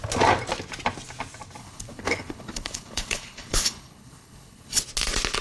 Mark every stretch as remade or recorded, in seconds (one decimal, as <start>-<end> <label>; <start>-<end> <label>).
0.0-1.6 recorded; 1.6-4.8 remade; 4.8-5.4 recorded